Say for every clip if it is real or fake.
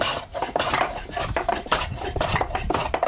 fake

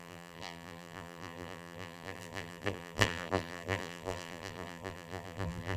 fake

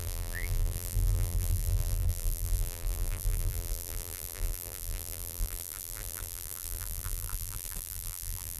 fake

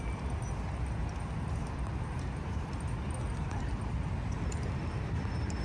real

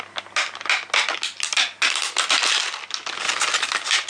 real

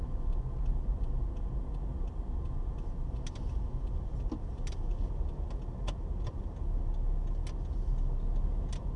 real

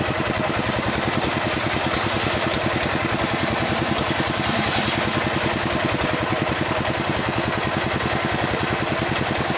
real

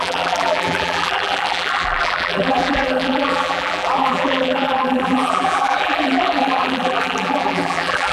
fake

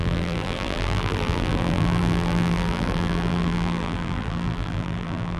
fake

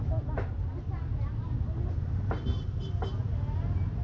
real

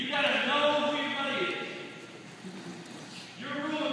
real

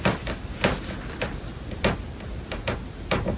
real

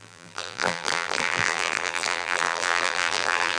fake